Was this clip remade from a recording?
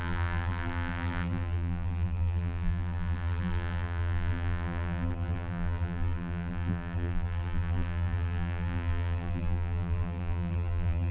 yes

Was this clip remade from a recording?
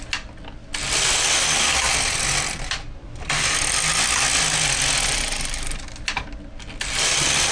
no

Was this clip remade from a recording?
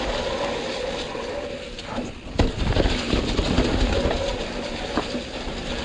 no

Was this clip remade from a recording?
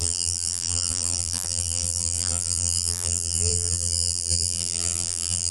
yes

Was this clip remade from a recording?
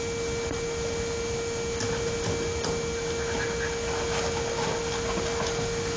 no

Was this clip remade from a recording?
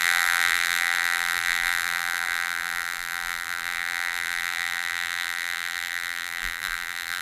yes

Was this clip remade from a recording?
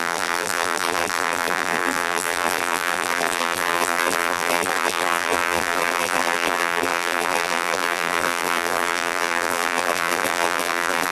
yes